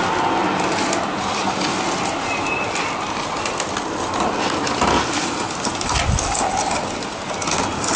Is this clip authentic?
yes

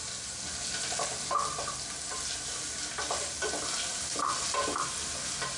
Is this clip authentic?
yes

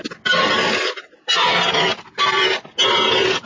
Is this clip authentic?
yes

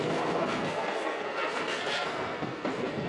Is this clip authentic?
no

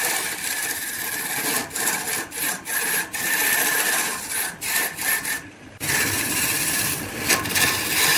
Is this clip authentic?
no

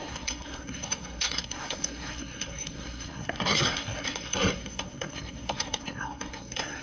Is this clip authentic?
no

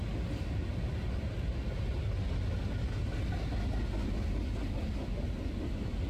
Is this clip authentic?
yes